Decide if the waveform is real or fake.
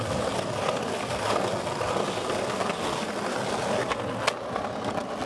real